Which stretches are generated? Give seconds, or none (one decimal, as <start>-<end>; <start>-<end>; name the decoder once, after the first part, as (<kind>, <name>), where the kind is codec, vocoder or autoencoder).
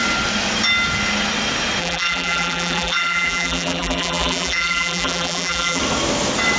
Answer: 1.8-5.8 (vocoder, BigVGAN v2)